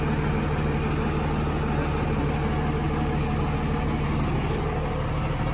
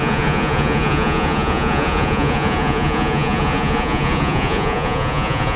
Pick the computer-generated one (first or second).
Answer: second